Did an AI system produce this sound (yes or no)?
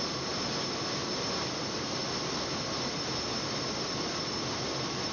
no